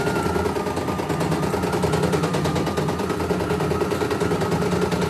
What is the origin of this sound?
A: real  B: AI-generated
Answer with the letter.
A